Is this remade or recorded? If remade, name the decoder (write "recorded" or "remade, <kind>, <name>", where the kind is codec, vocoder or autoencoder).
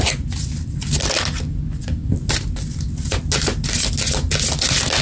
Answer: recorded